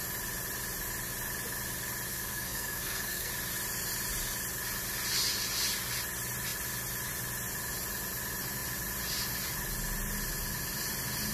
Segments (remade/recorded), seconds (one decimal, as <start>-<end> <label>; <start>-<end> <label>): 0.0-2.1 recorded; 2.1-3.3 remade; 3.3-11.3 recorded